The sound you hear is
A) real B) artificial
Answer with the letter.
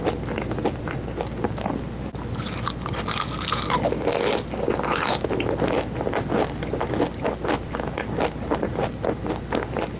A